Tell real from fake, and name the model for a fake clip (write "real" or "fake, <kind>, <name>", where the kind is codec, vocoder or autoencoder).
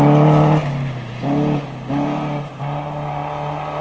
real